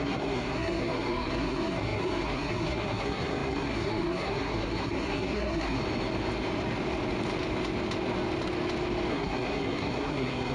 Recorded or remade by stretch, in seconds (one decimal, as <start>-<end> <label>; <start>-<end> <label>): 0.0-5.8 remade; 5.8-9.1 recorded; 9.1-10.5 remade